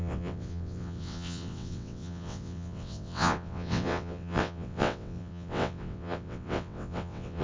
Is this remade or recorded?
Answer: remade